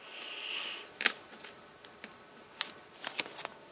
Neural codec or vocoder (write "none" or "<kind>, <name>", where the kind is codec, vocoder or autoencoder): none